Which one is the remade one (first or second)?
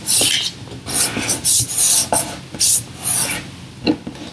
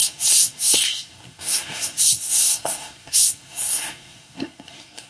second